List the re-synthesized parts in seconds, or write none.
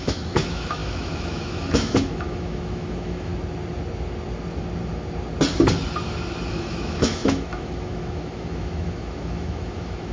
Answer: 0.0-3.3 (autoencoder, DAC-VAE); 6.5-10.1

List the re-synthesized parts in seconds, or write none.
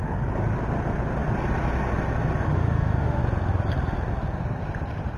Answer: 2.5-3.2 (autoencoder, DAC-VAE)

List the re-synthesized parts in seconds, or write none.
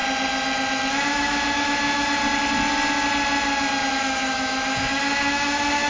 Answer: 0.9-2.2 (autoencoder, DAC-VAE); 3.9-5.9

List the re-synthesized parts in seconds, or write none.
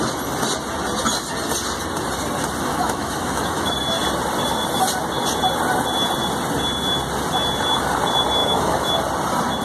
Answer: 2.7-3.7 (autoencoder, DAC-VAE); 8.4-8.9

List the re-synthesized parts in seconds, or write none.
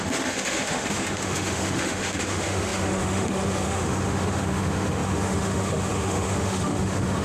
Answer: 0.0-7.2 (autoencoder, DAC-VAE)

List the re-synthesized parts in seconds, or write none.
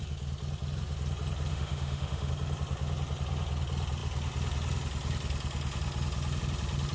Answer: 1.5-2.3 (autoencoder, DAC-VAE)